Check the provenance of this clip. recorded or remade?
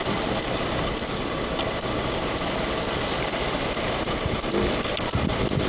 recorded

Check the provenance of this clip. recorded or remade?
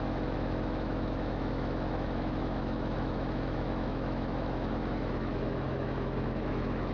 remade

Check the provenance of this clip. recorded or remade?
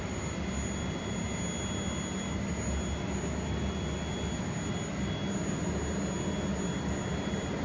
recorded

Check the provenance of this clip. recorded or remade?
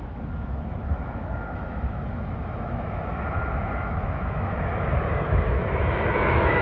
remade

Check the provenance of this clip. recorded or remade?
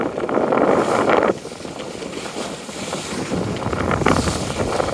recorded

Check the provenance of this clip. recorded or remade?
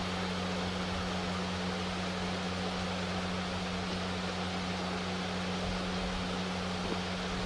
recorded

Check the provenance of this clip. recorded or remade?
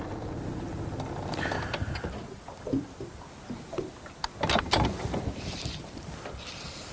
recorded